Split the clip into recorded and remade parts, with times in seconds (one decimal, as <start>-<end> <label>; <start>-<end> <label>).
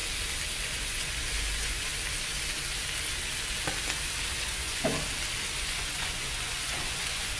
0.0-0.6 recorded; 0.6-1.9 remade; 1.9-4.4 recorded; 4.4-4.9 remade; 4.9-5.6 recorded; 5.6-7.4 remade